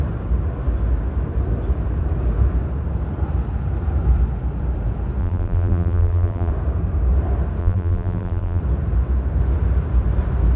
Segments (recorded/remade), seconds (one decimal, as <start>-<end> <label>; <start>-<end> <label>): 0.0-5.2 recorded; 5.2-6.5 remade; 6.5-7.6 recorded; 7.6-8.6 remade; 8.6-10.6 recorded